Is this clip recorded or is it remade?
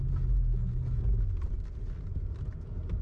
recorded